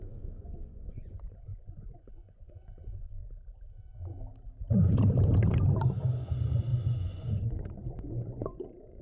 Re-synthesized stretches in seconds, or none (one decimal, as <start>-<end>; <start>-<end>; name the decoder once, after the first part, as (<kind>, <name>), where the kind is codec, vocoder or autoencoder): 0.0-3.2 (vocoder, Vocos); 6.3-9.0